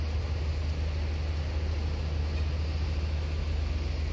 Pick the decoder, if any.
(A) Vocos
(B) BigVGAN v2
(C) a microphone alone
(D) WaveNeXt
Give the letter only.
C